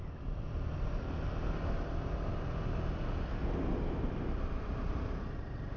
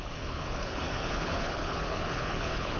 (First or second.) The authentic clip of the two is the first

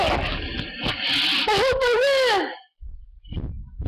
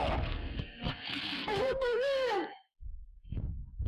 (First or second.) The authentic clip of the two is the first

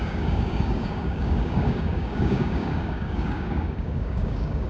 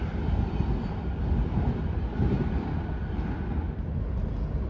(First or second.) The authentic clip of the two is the second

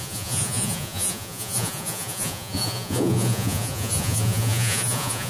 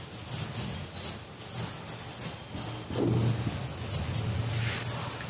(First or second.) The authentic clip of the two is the second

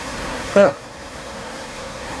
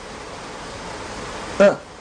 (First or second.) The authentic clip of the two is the second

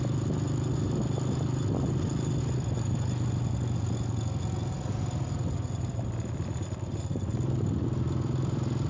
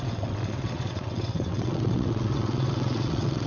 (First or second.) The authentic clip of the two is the first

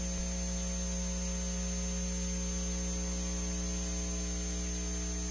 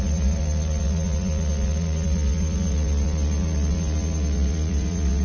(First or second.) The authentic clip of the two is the first